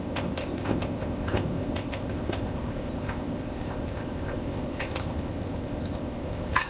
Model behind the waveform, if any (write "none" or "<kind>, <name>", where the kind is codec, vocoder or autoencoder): codec, ZipCodec